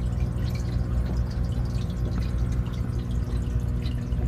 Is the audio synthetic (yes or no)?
no